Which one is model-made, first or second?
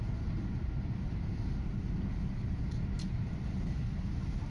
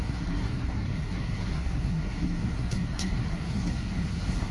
second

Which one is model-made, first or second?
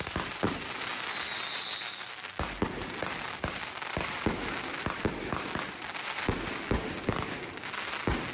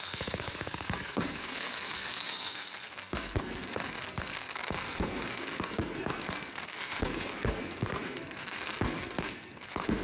second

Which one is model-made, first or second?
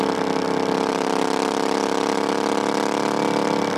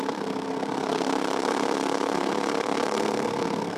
second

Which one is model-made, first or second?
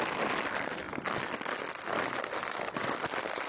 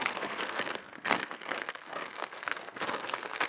second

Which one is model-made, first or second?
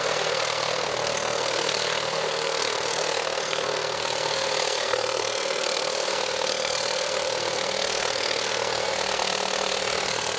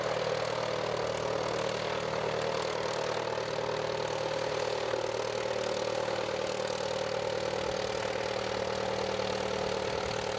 first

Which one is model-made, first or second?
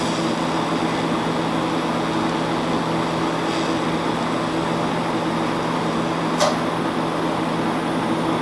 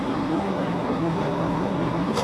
second